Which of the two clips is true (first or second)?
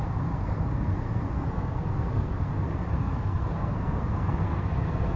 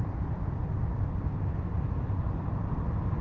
second